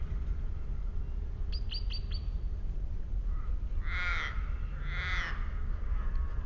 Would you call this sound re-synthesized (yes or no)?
no